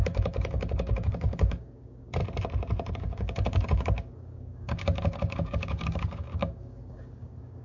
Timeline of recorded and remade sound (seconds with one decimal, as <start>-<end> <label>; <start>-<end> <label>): 0.0-2.2 remade; 2.2-2.9 recorded; 2.9-7.6 remade